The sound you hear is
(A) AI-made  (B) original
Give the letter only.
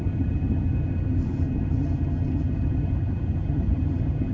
A